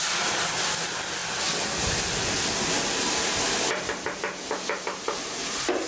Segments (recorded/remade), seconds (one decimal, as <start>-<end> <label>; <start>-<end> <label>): 0.0-5.9 recorded